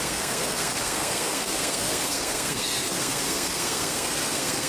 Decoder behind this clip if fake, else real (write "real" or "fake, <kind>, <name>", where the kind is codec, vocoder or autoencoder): fake, codec, SNAC